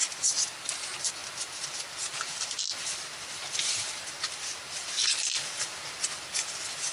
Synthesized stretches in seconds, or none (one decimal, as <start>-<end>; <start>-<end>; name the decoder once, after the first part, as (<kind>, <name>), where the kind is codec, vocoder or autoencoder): none